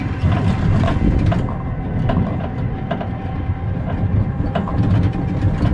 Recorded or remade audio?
recorded